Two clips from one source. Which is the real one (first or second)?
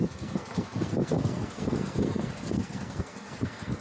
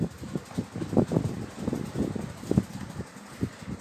second